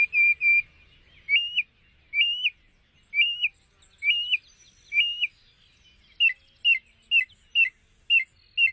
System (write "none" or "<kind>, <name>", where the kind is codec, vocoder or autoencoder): none